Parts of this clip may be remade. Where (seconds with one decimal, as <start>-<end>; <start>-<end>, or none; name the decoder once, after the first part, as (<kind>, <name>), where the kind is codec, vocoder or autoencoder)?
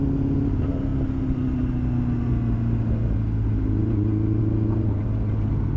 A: none